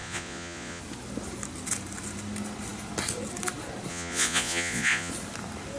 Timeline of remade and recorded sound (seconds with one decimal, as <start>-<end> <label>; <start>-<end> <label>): 0.0-0.8 remade; 0.8-3.9 recorded; 3.9-5.1 remade; 5.1-5.8 recorded